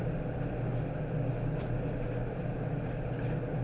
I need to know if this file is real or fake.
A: real